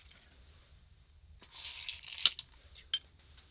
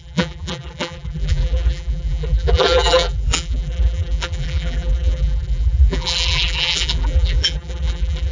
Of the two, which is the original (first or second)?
first